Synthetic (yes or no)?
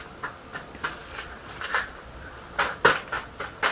no